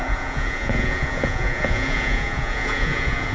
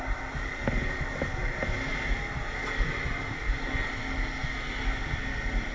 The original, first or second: second